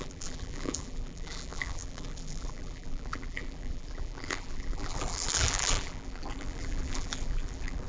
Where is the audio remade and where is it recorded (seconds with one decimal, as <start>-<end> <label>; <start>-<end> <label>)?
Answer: 0.0-7.9 remade